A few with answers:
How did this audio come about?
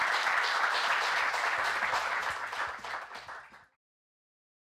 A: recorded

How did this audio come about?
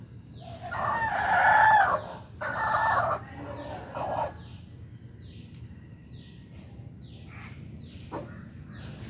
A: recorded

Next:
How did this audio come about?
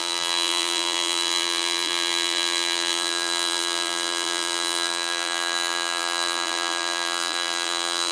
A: remade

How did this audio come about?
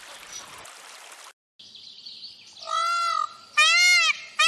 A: recorded